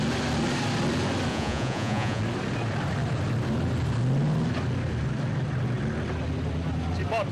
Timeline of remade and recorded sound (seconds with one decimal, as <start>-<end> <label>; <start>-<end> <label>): 0.0-1.3 recorded; 1.3-2.2 remade; 2.2-7.3 recorded